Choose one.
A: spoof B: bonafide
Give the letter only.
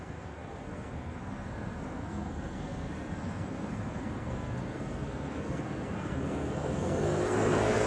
A